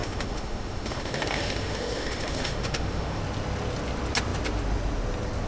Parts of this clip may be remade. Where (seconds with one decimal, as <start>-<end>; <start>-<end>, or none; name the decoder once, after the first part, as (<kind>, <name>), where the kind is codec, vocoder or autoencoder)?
0.0-3.2 (autoencoder, DAC-VAE)